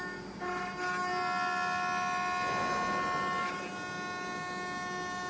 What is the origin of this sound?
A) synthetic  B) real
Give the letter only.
B